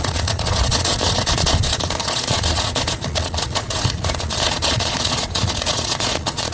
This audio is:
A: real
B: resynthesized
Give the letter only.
B